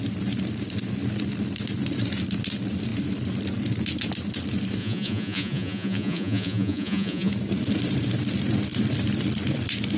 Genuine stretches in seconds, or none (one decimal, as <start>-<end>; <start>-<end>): 0.0-4.8; 7.3-10.0